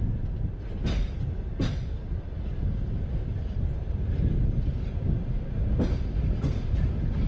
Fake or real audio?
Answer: real